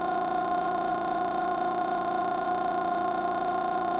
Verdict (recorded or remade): remade